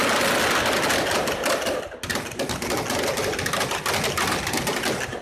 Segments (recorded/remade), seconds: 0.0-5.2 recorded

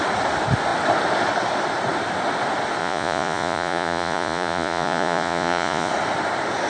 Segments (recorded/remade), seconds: 0.0-2.8 recorded; 2.8-5.9 remade; 5.9-6.7 recorded

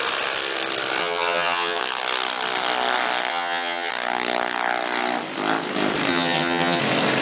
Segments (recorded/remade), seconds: 0.0-1.0 recorded; 1.0-1.8 remade; 1.8-3.3 recorded; 3.3-3.9 remade; 3.9-6.1 recorded; 6.1-6.8 remade; 6.8-7.2 recorded

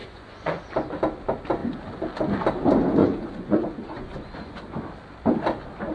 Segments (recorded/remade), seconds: 0.0-0.6 remade; 0.6-3.0 recorded; 3.0-4.6 remade; 4.6-5.9 recorded